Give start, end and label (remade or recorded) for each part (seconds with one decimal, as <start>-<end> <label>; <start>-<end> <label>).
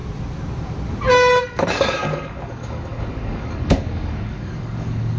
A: 0.0-1.4 recorded; 1.4-5.2 remade